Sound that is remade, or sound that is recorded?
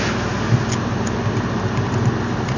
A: recorded